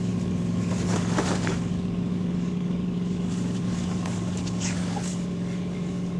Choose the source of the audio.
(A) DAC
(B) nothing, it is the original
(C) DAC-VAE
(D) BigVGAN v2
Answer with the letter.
A